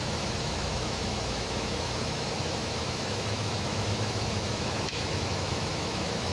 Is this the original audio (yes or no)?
no